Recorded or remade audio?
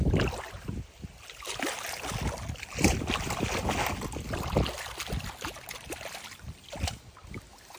recorded